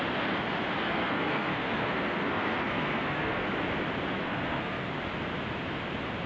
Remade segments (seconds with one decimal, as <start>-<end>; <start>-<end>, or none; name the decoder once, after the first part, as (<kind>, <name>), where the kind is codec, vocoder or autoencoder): 0.8-3.5 (codec, SNAC); 4.2-4.9